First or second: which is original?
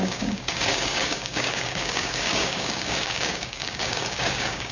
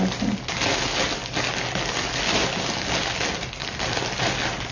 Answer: second